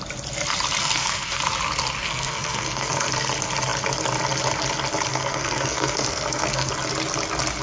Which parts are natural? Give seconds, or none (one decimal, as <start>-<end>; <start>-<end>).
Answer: 0.0-0.8; 1.4-2.0; 3.1-5.1; 6.7-7.6